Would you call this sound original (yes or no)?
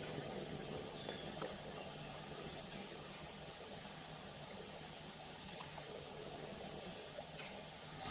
no